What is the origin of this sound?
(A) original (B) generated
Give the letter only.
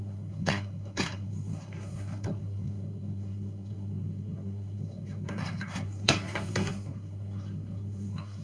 B